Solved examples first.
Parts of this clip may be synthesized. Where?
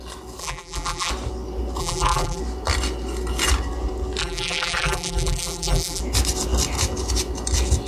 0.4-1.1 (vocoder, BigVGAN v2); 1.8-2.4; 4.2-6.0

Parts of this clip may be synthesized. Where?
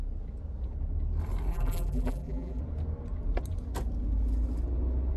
1.5-2.6 (vocoder, BigVGAN v2)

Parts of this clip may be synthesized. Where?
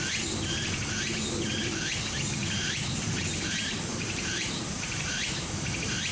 2.4-3.2 (vocoder, BigVGAN v2); 3.9-6.1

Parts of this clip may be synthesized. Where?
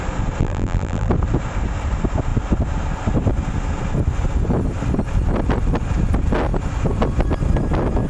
0.4-1.1 (vocoder, BigVGAN v2)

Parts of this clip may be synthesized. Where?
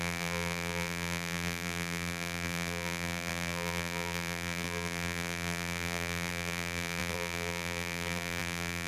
0.0-8.9 (vocoder, BigVGAN v2)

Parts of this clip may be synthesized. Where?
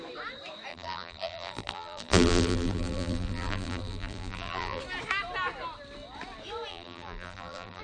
0.7-4.8 (vocoder, BigVGAN v2); 6.7-7.8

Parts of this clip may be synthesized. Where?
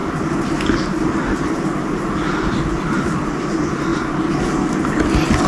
0.0-3.3 (vocoder, BigVGAN v2)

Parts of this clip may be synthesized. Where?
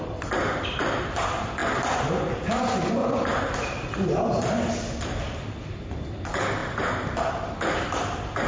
1.6-2.3 (vocoder, BigVGAN v2); 3.0-4.7; 6.6-7.2